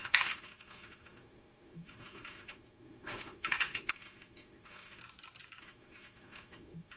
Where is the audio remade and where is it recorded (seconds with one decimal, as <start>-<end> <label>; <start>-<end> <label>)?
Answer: 0.0-5.0 remade; 5.0-5.6 recorded; 5.6-7.0 remade